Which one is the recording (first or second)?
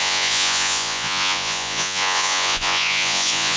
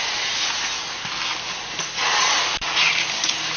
second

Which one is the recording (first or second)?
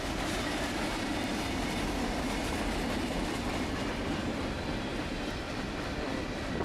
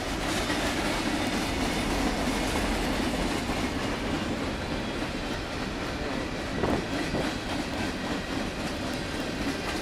second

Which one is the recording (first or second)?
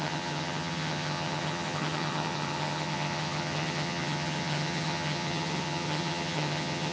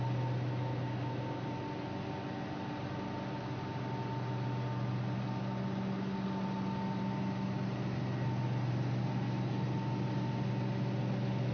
second